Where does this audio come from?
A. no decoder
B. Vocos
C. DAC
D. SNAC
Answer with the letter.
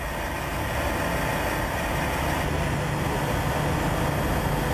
A